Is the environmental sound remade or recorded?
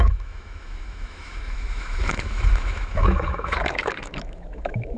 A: remade